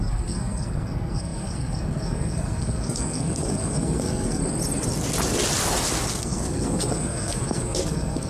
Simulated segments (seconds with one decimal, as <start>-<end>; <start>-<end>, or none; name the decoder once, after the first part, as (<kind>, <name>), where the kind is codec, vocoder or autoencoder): 0.0-4.4 (codec, SNAC); 6.1-8.3